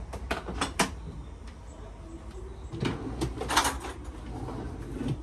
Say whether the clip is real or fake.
real